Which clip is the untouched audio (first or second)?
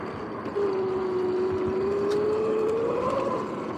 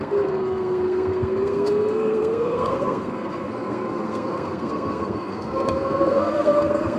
first